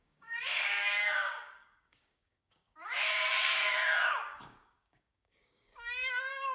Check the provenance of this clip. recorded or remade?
remade